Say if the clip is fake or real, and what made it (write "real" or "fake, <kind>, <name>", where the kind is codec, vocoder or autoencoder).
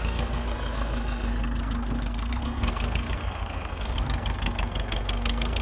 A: fake, codec, SNAC